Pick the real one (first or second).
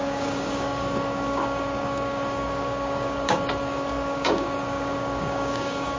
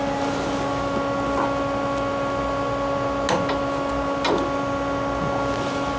second